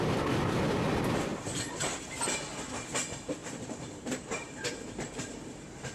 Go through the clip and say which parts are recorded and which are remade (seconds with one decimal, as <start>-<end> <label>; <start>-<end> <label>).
0.0-1.3 recorded; 1.3-2.1 remade; 2.1-3.4 recorded; 3.4-5.2 remade; 5.2-5.9 recorded